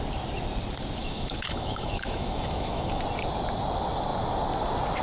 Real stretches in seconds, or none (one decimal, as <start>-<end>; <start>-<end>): 0.0-1.0; 3.0-5.0